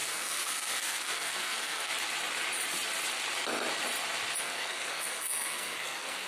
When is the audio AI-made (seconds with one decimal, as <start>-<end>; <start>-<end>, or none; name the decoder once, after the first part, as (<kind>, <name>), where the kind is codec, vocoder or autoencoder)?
0.0-1.9 (codec, SNAC); 4.4-6.3